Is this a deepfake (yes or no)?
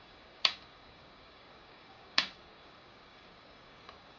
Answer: yes